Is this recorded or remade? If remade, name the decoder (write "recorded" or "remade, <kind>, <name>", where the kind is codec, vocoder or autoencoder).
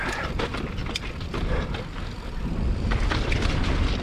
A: remade, vocoder, BigVGAN v2